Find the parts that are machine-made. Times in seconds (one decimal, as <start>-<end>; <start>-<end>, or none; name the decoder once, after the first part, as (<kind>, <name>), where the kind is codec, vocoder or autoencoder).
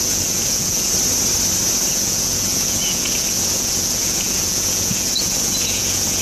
0.0-0.9 (vocoder, Vocos); 1.9-6.2